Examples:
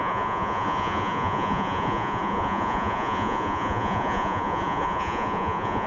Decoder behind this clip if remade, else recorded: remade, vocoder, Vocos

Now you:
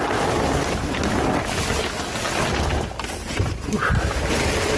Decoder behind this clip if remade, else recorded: recorded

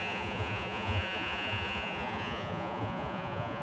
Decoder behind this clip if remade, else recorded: remade, vocoder, Vocos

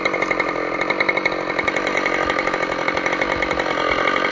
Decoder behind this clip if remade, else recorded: recorded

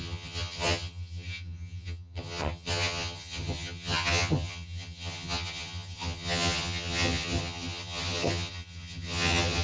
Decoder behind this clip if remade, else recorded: remade, vocoder, HiFi-GAN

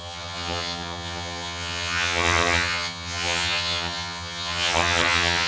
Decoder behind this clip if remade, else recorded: remade, vocoder, HiFi-GAN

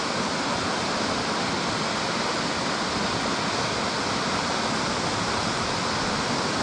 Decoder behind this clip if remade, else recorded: recorded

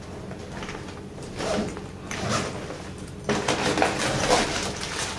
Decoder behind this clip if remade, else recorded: remade, vocoder, BigVGAN v2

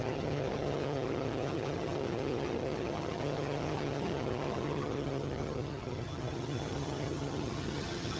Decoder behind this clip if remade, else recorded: remade, vocoder, HiFi-GAN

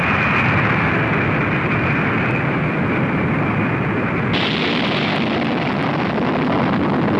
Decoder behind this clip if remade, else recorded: recorded